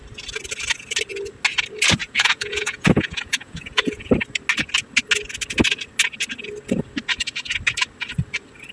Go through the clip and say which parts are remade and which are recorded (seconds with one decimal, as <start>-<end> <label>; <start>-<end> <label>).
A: 0.0-2.0 recorded; 2.0-4.1 remade; 4.1-8.7 recorded